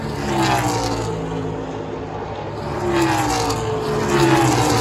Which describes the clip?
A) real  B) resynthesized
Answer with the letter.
A